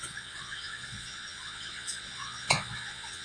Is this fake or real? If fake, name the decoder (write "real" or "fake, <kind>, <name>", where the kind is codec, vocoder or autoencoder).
fake, vocoder, Vocos